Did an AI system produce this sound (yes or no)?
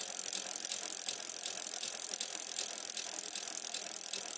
no